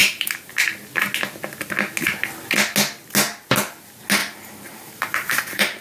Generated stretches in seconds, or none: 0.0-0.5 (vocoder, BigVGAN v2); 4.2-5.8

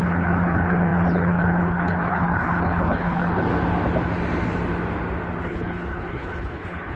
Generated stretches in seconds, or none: 0.0-3.5 (codec, HILCodec); 5.4-7.0

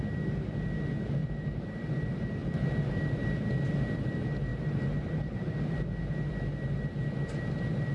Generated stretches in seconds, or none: 1.2-1.9 (vocoder, BigVGAN v2); 4.5-5.8

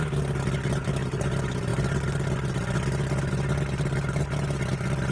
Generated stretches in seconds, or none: none